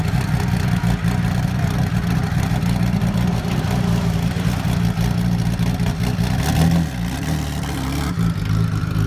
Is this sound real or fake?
real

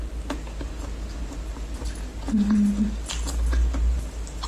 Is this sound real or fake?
real